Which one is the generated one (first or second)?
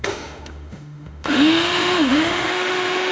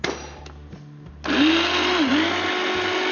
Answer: first